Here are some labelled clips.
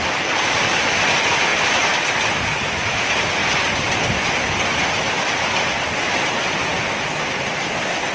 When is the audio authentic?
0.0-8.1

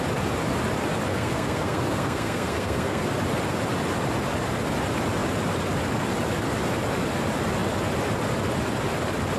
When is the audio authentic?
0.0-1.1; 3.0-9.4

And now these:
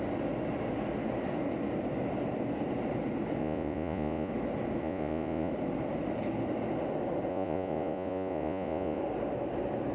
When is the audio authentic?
0.0-3.4; 4.3-4.8; 5.5-7.3; 9.0-9.9